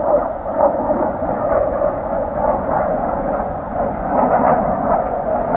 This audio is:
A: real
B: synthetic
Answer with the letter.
B